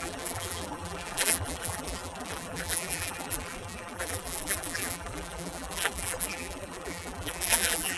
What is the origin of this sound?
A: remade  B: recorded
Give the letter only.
A